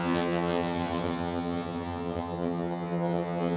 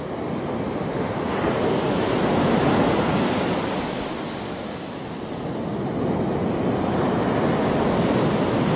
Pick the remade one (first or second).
first